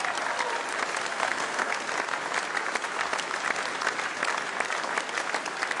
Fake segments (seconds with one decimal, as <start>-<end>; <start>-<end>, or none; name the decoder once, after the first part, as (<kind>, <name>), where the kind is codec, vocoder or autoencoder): 1.1-1.9 (codec, SNAC)